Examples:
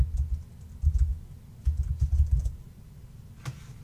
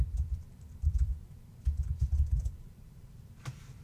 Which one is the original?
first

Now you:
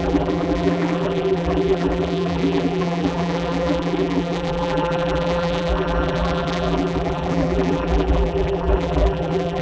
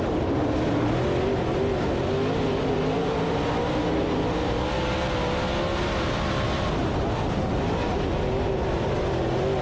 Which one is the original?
second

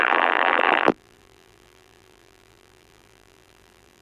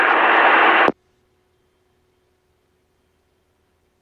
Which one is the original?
second